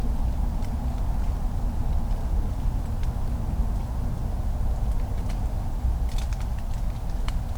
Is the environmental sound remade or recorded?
recorded